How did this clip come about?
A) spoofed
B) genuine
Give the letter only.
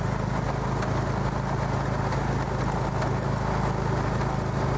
B